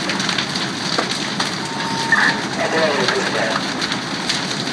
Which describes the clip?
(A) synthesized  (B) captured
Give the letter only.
B